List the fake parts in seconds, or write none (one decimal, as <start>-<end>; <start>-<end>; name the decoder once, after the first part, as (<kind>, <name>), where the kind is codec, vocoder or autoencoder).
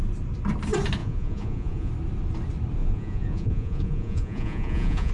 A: 1.0-1.9 (vocoder, Vocos); 2.8-5.1